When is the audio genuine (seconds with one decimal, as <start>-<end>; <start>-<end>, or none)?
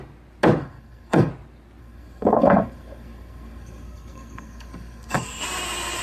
0.0-0.6; 1.3-1.8; 5.4-6.0